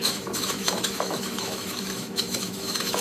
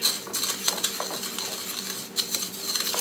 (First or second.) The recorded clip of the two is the second